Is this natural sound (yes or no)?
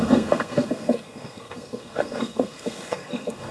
no